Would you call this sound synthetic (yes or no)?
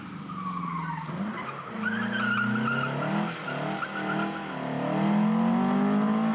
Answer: no